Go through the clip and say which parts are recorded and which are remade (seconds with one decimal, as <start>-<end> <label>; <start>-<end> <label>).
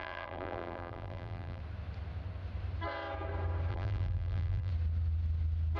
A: 0.0-1.6 remade; 1.6-3.7 recorded; 3.7-4.7 remade; 4.7-5.8 recorded